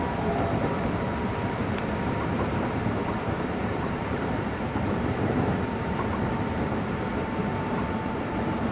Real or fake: fake